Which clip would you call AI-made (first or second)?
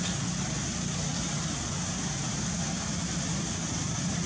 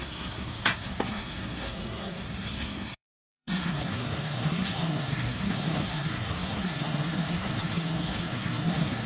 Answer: second